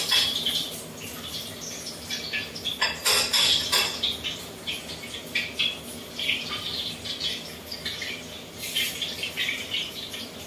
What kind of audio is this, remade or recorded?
recorded